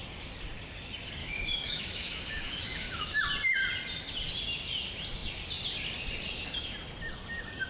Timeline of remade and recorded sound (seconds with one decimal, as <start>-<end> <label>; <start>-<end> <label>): 0.0-1.2 recorded; 1.2-3.2 remade; 3.2-7.7 recorded